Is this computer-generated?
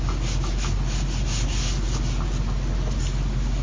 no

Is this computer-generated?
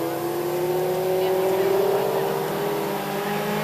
no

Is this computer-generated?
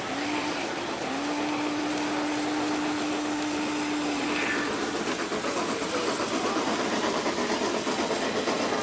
no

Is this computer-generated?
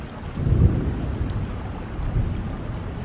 no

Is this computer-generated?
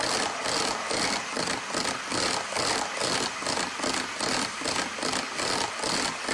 no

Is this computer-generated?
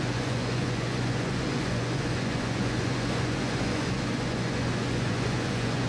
yes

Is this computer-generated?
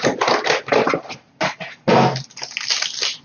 no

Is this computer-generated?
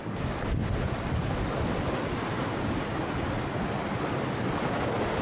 no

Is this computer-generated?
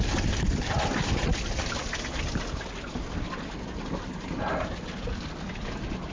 no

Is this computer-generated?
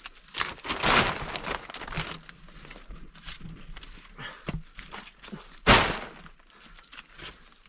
no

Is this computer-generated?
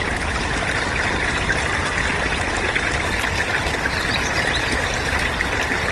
no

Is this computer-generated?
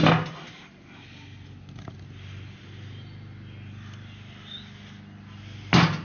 no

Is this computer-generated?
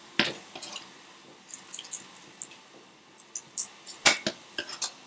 no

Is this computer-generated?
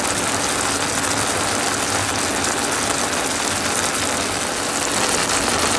no